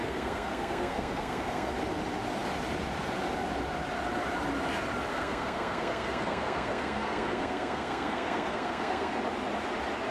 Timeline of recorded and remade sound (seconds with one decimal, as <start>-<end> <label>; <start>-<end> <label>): 0.0-1.7 remade; 1.7-5.1 recorded; 5.1-9.2 remade; 9.2-10.1 recorded